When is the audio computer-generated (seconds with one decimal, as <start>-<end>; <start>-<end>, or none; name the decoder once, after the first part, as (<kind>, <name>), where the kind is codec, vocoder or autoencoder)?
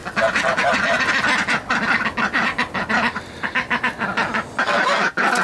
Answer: none